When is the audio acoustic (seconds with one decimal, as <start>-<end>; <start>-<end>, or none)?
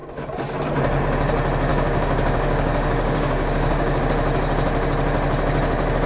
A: 0.0-1.7; 4.0-6.1